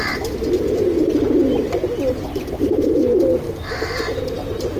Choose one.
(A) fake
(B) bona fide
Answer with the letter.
B